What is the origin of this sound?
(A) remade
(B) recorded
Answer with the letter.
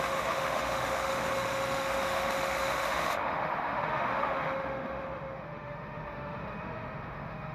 A